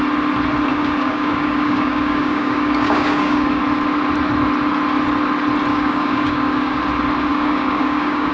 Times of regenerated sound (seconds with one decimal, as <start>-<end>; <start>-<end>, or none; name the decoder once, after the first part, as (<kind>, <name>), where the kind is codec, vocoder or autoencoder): 0.7-3.6 (codec, DAC); 5.7-6.8; 7.3-8.3